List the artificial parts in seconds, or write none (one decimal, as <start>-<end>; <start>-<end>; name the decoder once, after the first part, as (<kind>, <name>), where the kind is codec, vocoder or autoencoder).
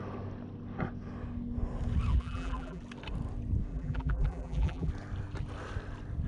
2.1-2.8 (vocoder, BigVGAN v2); 3.7-4.9